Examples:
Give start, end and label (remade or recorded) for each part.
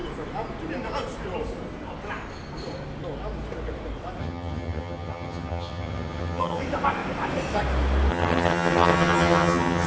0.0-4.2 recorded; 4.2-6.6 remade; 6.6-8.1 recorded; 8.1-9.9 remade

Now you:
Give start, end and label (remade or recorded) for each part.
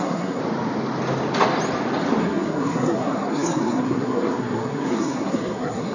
0.0-0.4 remade; 0.4-2.2 recorded; 2.2-5.9 remade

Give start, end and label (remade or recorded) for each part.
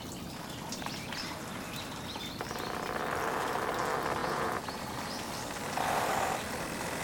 0.0-4.2 recorded; 4.2-4.8 remade; 4.8-7.0 recorded